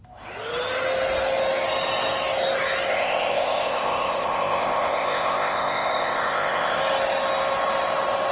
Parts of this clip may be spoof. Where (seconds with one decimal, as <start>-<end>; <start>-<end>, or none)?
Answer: 2.9-6.8